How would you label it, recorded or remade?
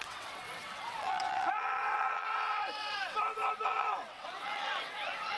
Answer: remade